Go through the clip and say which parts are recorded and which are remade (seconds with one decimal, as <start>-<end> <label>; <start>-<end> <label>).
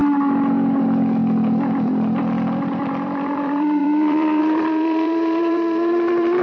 0.0-2.8 recorded; 2.8-6.4 remade